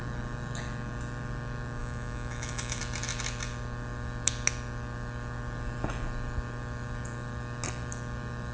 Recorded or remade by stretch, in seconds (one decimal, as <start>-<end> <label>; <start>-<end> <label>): 0.0-1.8 recorded; 1.8-2.8 remade; 2.8-8.5 recorded